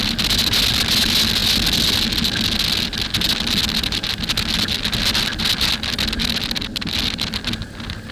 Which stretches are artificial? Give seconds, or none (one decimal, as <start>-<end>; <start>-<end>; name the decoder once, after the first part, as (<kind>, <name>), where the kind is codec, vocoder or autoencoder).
none